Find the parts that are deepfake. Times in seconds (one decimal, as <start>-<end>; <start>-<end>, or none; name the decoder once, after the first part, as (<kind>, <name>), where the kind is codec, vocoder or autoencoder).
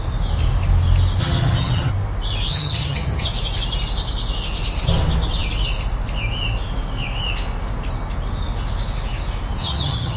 1.2-1.9 (vocoder, HiFi-GAN); 2.5-3.3; 9.6-10.2